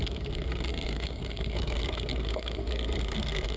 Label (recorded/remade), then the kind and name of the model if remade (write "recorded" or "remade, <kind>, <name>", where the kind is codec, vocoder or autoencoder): remade, codec, SNAC